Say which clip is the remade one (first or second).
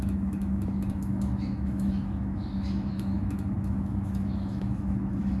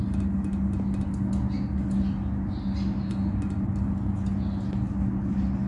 first